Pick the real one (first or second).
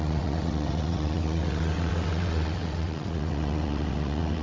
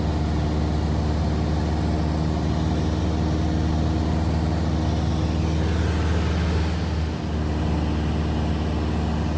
second